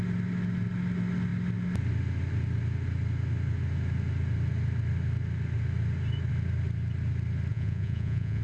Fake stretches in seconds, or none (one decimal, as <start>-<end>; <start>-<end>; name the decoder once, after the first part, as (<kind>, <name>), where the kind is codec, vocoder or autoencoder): 7.5-8.4 (vocoder, Vocos)